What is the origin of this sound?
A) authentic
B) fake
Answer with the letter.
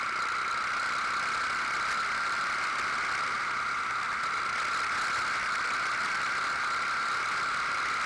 A